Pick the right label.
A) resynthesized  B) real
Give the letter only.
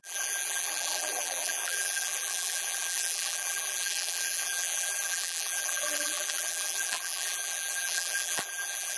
A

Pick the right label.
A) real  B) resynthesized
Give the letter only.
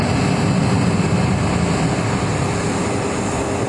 A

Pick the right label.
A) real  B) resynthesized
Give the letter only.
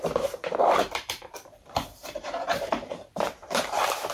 B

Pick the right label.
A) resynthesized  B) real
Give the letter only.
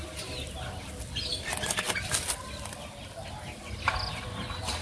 B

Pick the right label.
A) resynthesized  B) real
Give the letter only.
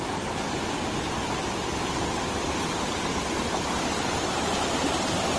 A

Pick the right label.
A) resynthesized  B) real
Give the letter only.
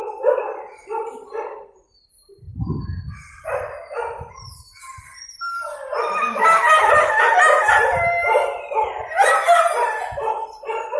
A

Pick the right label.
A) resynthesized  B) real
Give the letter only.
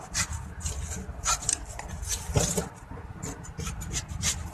A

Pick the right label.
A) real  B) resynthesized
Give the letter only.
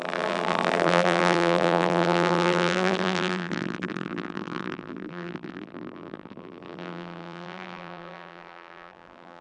B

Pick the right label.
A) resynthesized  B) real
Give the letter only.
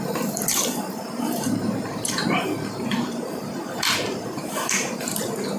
A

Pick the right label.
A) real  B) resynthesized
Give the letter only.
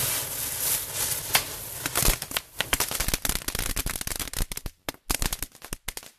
A